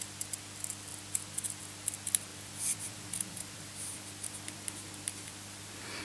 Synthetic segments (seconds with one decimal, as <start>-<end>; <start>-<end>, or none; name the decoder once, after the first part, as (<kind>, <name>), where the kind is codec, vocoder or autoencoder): 2.3-6.0 (vocoder, BigVGAN v2)